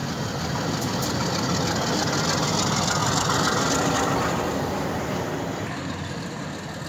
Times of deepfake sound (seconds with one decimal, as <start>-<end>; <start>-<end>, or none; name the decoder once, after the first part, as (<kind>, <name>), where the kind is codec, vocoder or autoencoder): none